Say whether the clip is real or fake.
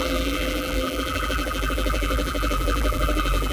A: fake